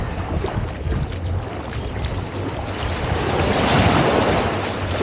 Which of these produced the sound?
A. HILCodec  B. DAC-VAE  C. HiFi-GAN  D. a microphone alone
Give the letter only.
D